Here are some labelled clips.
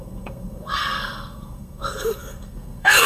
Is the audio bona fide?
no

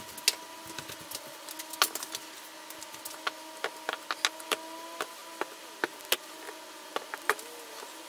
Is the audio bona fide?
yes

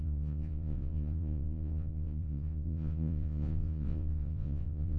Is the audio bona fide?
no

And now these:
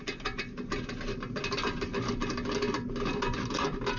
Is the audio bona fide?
yes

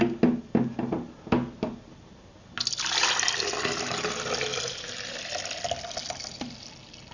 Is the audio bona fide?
yes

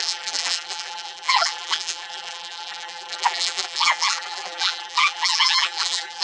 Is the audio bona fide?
no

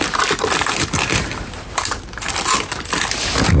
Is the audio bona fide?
yes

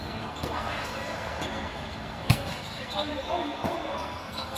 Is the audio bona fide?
no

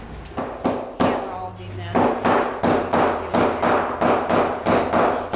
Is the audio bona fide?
yes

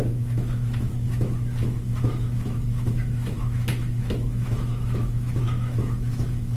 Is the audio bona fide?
no